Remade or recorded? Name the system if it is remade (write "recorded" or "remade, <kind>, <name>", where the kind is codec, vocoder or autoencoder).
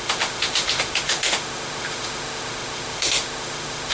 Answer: remade, autoencoder, DAC-VAE